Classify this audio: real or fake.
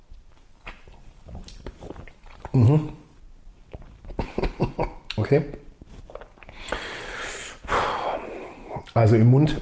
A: fake